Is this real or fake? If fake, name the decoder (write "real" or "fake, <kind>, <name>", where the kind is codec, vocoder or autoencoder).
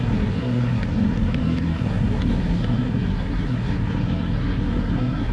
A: fake, codec, SNAC